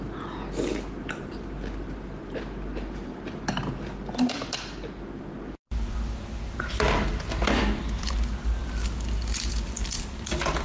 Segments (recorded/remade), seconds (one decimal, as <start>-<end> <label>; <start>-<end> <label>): 0.0-10.6 recorded